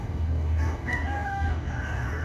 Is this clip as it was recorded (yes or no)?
no